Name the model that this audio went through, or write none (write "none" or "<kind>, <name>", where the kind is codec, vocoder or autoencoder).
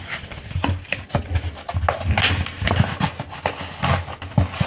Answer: none